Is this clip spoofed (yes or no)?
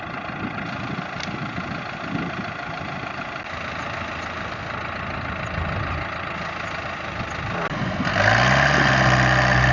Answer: no